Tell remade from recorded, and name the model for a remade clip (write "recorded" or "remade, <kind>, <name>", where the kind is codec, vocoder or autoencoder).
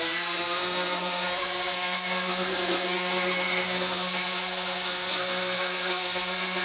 remade, codec, SNAC